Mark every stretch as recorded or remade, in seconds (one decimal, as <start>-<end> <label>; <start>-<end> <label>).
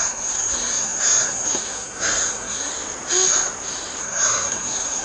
0.0-2.7 remade; 2.7-4.0 recorded; 4.0-5.0 remade